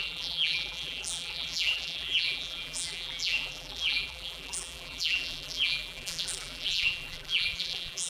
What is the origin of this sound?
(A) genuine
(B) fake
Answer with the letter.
B